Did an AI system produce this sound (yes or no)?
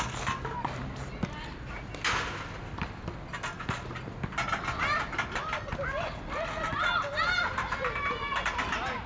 no